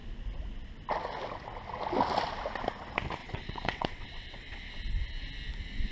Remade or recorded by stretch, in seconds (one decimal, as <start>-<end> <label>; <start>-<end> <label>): 0.0-3.2 recorded; 3.2-4.7 remade; 4.7-5.9 recorded